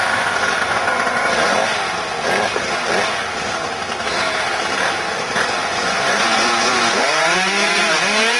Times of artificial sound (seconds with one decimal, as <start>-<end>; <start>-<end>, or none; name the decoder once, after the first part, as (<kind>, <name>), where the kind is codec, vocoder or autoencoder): 0.0-1.6 (vocoder, Vocos); 5.0-8.4